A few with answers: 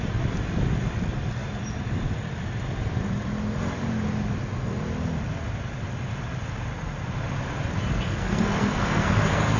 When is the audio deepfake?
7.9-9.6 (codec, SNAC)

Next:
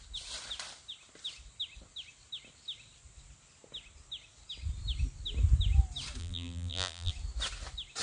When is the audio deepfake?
6.2-7.1 (vocoder, BigVGAN v2)

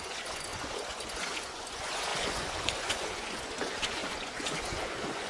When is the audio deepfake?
0.0-5.3 (vocoder, Vocos)

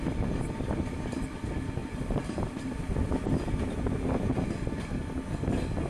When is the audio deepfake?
1.8-3.9 (vocoder, BigVGAN v2)

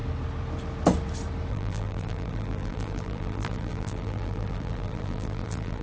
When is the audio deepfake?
1.5-5.8 (vocoder, BigVGAN v2)

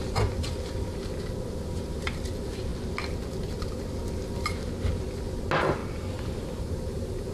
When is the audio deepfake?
none

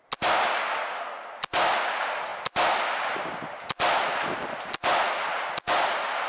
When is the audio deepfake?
none

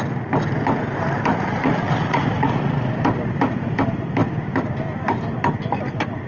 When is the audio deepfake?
1.3-2.7 (vocoder, Vocos)